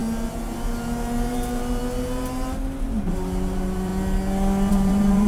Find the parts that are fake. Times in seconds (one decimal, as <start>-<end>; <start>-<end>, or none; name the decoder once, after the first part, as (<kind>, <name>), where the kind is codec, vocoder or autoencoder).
1.3-1.8 (vocoder, BigVGAN v2); 2.8-3.9; 4.7-5.3